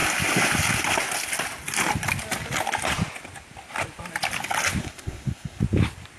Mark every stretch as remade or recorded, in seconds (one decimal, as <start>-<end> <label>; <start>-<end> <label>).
0.0-4.8 recorded; 4.8-5.6 remade; 5.6-6.2 recorded